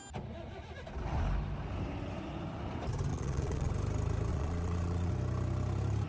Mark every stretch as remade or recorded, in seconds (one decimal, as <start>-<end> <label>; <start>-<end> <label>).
0.0-3.1 recorded; 3.1-3.7 remade; 3.7-4.3 recorded; 4.3-5.1 remade; 5.1-6.1 recorded